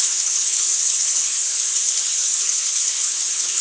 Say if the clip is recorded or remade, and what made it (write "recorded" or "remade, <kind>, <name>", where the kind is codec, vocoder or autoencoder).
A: remade, codec, HILCodec